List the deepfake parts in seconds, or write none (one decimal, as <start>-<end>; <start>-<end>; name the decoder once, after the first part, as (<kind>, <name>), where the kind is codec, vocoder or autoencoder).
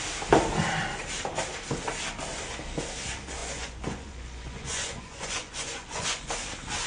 3.4-6.3 (vocoder, Vocos)